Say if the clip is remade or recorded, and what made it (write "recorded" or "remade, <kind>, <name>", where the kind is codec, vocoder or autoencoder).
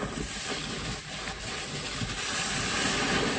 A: remade, vocoder, BigVGAN v2